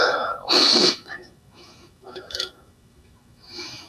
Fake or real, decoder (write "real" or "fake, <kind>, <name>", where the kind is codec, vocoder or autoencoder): fake, autoencoder, DAC-VAE